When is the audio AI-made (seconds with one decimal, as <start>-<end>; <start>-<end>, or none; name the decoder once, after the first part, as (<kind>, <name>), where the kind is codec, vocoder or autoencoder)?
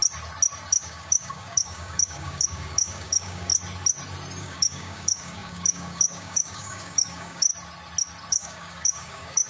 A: 0.7-3.5 (codec, DAC); 4.4-7.5; 8.3-9.5